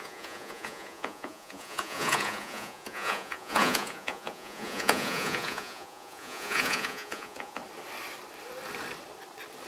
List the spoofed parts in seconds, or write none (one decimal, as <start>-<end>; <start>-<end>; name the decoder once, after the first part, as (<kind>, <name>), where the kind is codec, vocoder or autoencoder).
0.0-7.6 (vocoder, Vocos)